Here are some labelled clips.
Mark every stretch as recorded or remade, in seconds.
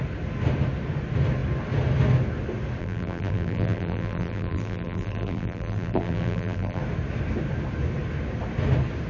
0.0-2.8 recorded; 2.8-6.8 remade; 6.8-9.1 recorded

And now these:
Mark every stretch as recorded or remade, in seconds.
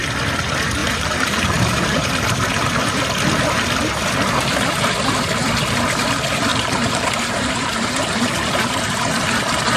0.0-0.8 recorded; 0.8-2.6 remade; 2.6-6.5 recorded; 6.5-8.5 remade; 8.5-9.8 recorded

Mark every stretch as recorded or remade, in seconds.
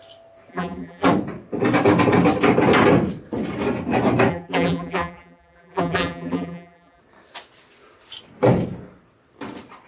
0.0-0.5 recorded; 0.5-1.1 remade; 1.1-4.3 recorded; 4.3-7.0 remade; 7.0-9.9 recorded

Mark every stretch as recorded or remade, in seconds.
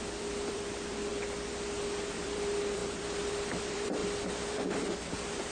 0.0-1.1 remade; 1.1-2.1 recorded; 2.1-5.5 remade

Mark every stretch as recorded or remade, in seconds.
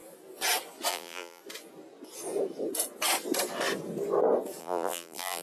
0.0-0.9 recorded; 0.9-1.4 remade; 1.4-4.6 recorded; 4.6-5.4 remade